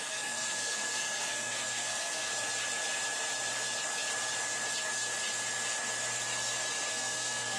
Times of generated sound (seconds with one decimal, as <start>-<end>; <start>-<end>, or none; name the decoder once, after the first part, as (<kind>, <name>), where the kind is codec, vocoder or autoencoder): 0.0-2.3 (codec, SNAC); 6.9-7.6